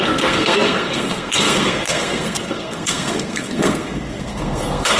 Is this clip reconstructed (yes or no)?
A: yes